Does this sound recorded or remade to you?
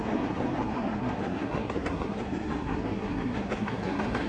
remade